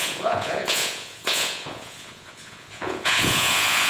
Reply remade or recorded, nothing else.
remade